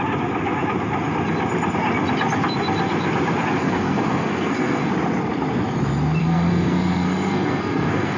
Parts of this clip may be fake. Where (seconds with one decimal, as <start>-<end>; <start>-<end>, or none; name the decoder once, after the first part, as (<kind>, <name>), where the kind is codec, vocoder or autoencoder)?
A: 3.6-4.9 (codec, SNAC); 6.2-8.2